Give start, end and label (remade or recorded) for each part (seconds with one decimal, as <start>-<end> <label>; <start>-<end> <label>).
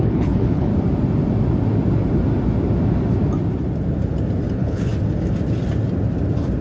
0.0-0.7 remade; 0.7-4.5 recorded; 4.5-4.9 remade; 4.9-6.6 recorded